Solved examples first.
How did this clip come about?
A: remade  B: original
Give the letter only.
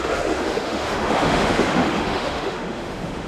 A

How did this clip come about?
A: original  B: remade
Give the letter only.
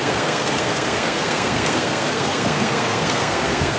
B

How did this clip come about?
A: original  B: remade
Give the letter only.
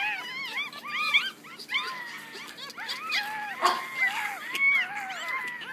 A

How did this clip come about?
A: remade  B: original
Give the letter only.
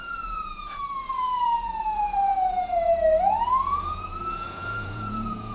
A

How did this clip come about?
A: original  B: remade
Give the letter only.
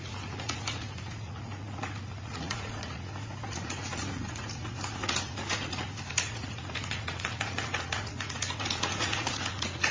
B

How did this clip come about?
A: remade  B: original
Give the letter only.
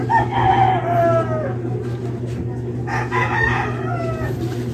B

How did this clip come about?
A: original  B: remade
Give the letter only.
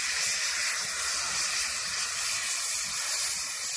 B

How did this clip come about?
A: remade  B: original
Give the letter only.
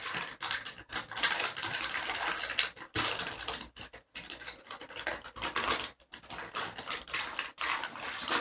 B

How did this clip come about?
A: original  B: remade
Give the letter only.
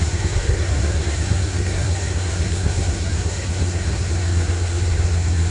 B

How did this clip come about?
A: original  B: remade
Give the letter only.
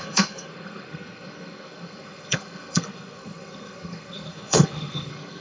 B